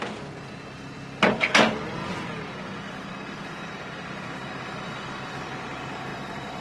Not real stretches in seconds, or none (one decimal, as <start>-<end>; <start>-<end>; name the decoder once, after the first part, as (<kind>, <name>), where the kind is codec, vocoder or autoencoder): 2.0-5.2 (vocoder, BigVGAN v2); 6.1-6.6